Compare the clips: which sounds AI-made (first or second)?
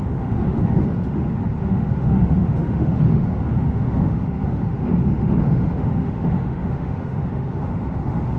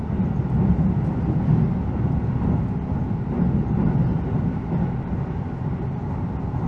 first